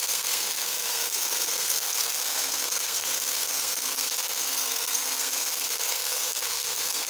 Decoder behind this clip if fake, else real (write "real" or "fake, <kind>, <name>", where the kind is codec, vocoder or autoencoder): fake, codec, SNAC